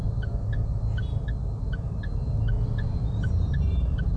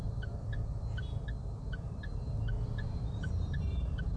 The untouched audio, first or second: first